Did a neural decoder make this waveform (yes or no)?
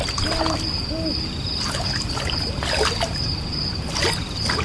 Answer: no